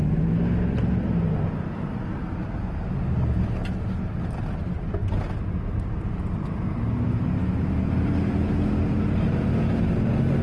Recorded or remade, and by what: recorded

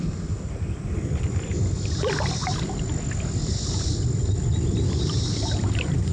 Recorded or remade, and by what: recorded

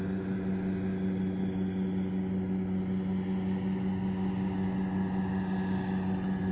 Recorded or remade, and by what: recorded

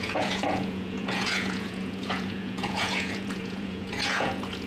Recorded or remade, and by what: remade, vocoder, Vocos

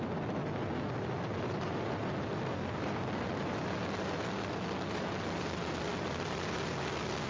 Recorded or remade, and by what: recorded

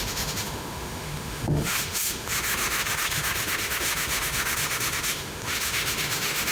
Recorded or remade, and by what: remade, autoencoder, DAC-VAE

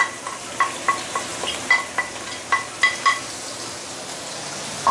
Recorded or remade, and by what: recorded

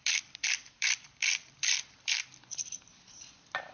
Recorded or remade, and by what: remade, vocoder, BigVGAN v2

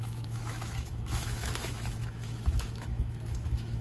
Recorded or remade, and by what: remade, autoencoder, DAC-VAE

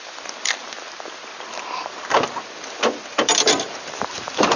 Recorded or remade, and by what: recorded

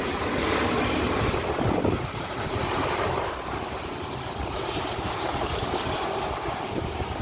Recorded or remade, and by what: remade, vocoder, BigVGAN v2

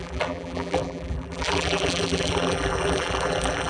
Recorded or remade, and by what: remade, vocoder, BigVGAN v2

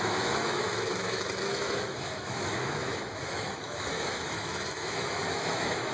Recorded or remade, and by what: remade, autoencoder, DAC-VAE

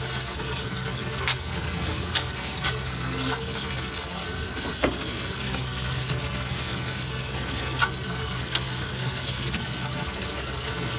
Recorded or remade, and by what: remade, codec, SNAC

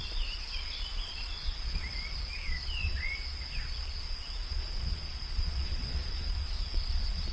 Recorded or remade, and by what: remade, vocoder, Vocos